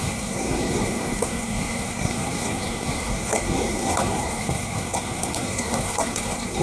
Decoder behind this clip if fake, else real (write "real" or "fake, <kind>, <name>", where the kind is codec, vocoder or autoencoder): fake, codec, SNAC